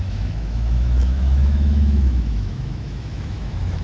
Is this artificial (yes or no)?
yes